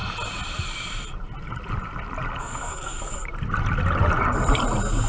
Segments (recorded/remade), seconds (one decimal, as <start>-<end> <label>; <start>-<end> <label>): 0.0-2.4 recorded; 2.4-3.2 remade; 3.2-5.1 recorded